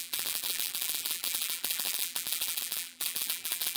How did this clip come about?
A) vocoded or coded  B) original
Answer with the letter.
A